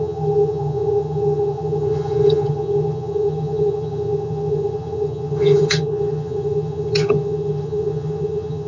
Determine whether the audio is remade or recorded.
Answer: remade